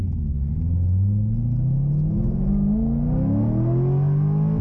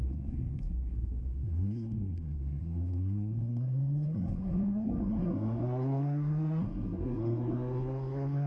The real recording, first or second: first